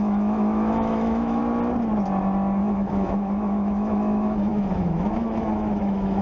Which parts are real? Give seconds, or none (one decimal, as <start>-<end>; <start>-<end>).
1.4-2.6